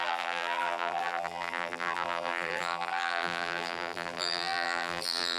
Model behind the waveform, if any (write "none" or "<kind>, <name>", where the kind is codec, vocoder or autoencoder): vocoder, BigVGAN v2